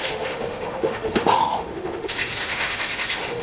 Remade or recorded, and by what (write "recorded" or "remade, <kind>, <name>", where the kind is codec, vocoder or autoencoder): remade, autoencoder, DAC-VAE